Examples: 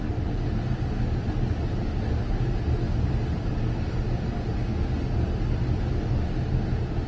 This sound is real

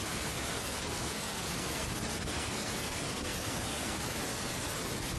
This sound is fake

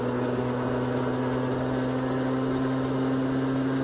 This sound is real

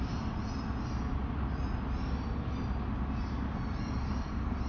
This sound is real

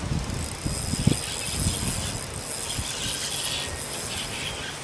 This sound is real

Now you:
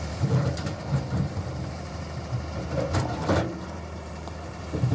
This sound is fake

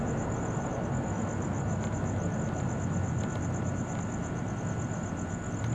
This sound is real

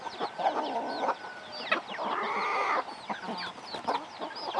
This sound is real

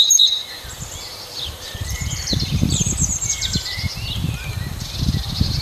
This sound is fake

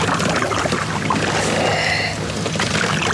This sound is real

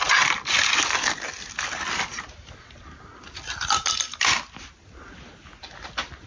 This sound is real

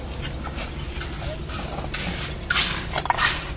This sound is real